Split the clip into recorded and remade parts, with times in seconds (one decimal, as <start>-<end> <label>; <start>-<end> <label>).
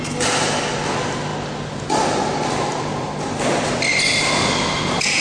0.0-5.2 recorded